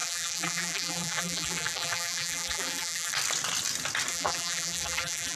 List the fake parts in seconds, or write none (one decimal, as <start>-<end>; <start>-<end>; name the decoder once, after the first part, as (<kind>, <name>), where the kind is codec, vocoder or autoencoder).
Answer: 0.0-3.1 (vocoder, BigVGAN v2); 4.1-5.4